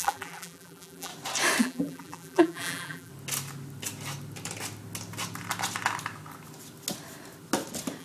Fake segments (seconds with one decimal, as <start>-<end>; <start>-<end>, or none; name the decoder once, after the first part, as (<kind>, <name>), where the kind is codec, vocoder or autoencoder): 0.0-1.1 (vocoder, BigVGAN v2); 1.6-3.1